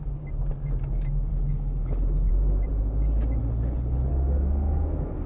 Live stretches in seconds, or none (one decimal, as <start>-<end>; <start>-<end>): 0.0-1.3; 2.3-3.4; 4.1-5.3